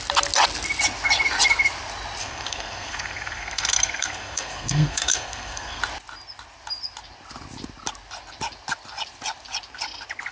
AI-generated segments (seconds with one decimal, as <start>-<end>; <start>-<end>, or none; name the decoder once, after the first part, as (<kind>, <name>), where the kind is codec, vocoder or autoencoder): 2.2-5.8 (codec, SNAC)